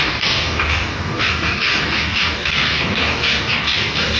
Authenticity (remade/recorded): remade